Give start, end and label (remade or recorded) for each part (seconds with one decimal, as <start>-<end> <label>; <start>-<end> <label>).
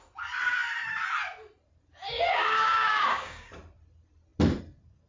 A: 0.0-2.3 recorded; 2.3-3.5 remade; 3.5-5.1 recorded